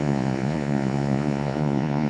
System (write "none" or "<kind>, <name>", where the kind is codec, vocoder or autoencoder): vocoder, Vocos